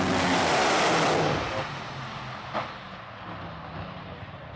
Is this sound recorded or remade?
recorded